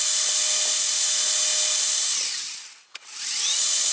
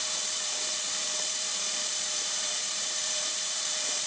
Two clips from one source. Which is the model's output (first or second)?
second